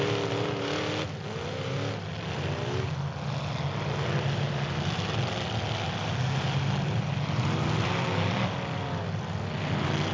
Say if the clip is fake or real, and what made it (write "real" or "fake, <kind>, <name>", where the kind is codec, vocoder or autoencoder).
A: real